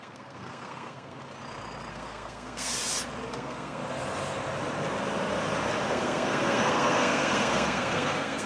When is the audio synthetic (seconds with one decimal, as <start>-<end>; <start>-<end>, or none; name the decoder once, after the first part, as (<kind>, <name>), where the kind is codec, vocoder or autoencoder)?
0.0-1.2 (codec, SNAC); 1.9-2.7; 3.3-3.8; 5.9-8.5